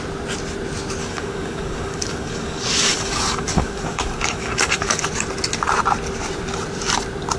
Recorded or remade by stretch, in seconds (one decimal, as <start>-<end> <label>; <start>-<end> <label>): 0.0-1.0 recorded; 1.0-5.0 remade; 5.0-7.4 recorded